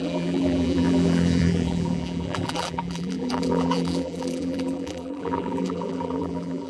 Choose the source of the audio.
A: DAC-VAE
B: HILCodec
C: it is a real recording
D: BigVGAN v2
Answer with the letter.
D